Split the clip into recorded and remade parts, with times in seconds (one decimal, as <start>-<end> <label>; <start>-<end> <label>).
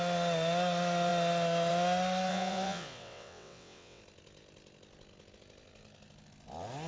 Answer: 0.0-2.3 recorded; 2.3-4.0 remade; 4.0-6.9 recorded